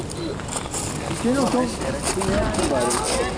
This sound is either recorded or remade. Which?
recorded